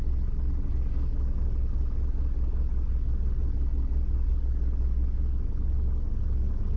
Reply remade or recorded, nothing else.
recorded